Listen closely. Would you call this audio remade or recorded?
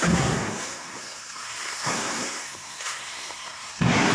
remade